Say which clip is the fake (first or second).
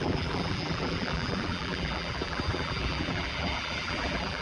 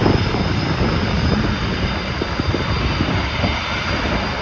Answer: first